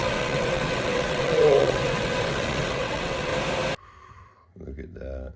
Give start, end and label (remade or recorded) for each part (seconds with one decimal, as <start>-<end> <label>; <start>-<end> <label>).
0.0-3.3 remade; 3.3-5.4 recorded